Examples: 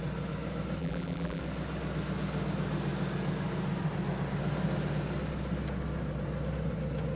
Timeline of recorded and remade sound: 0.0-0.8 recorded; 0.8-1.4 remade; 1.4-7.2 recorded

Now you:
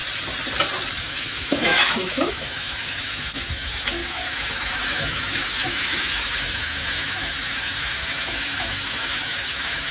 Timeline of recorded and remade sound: 0.0-1.0 recorded; 1.0-9.9 remade

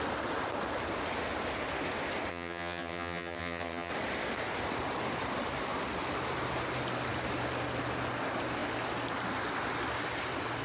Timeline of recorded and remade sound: 0.0-2.3 recorded; 2.3-3.9 remade; 3.9-10.6 recorded